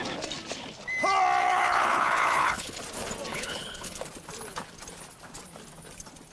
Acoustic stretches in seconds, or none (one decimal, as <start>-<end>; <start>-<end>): 0.0-1.4; 2.8-3.3; 4.0-6.3